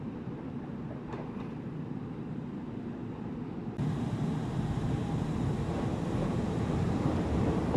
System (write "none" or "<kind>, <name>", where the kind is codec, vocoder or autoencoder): vocoder, BigVGAN v2